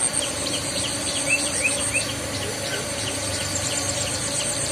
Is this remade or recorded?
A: recorded